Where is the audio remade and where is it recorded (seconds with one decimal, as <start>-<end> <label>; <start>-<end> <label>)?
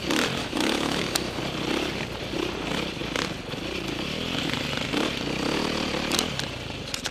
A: 0.0-0.4 recorded; 0.4-1.4 remade; 1.4-7.1 recorded